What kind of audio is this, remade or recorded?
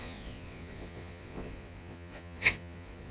remade